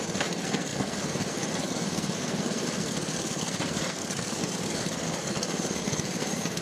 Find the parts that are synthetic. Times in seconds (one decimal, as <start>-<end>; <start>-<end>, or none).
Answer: 0.0-6.6